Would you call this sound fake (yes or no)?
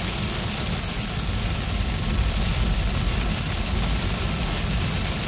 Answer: no